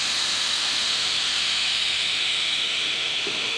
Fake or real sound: fake